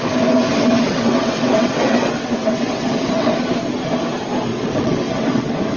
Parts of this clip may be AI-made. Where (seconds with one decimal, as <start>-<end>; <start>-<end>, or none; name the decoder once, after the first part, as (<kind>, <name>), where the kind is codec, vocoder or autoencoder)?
0.5-3.4 (vocoder, WaveNeXt); 4.5-5.8